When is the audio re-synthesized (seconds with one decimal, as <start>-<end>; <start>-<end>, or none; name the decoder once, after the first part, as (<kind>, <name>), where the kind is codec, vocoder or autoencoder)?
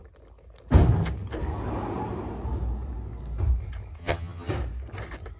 4.0-4.5 (vocoder, HiFi-GAN)